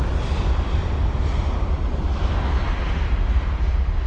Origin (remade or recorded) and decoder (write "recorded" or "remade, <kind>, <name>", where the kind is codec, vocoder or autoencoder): recorded